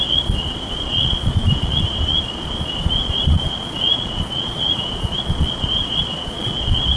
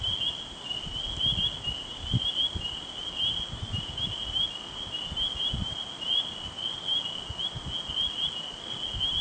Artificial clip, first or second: first